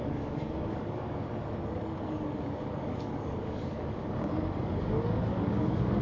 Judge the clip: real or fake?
fake